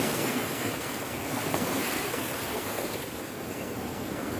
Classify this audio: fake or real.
fake